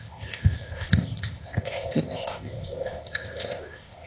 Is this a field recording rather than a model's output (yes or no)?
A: no